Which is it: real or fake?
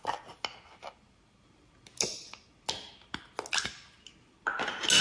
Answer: real